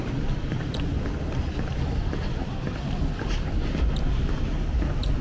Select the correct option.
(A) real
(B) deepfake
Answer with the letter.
A